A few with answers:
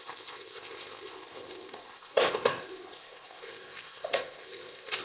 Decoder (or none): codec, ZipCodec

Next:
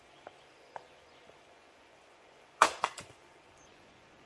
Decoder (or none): vocoder, Vocos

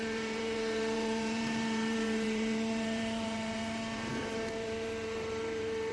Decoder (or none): vocoder, BigVGAN v2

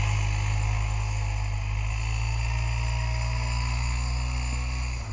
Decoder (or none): none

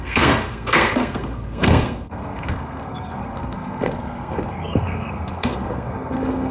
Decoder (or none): codec, SNAC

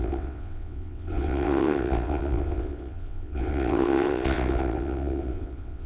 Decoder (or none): vocoder, WaveNeXt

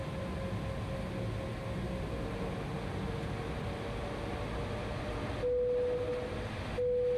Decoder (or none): none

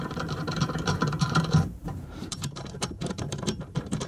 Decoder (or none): vocoder, BigVGAN v2